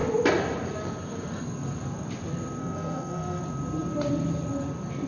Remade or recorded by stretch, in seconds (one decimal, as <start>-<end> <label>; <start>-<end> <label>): 0.0-2.6 recorded; 2.6-3.4 remade; 3.4-5.1 recorded